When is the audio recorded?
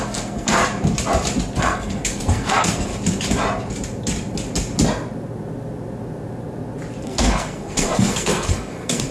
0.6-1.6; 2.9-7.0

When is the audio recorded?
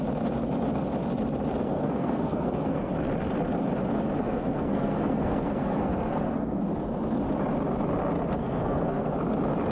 0.0-1.6; 2.9-4.2; 6.6-8.4; 9.1-9.7